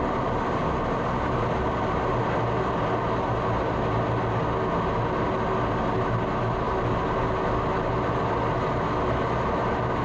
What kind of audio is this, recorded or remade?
recorded